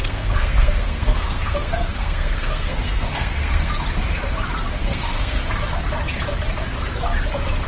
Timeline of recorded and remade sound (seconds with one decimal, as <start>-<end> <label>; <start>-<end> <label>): 0.0-3.7 remade; 3.7-4.8 recorded; 4.8-5.4 remade; 5.4-7.7 recorded